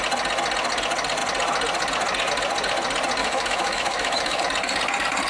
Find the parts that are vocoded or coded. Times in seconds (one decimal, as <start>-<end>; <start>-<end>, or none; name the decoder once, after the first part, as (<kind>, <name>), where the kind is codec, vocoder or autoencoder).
3.2-4.4 (autoencoder, DAC-VAE)